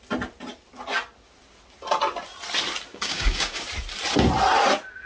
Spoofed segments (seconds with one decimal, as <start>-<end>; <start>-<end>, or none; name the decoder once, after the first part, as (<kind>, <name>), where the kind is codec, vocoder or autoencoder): 2.9-3.6 (codec, DAC)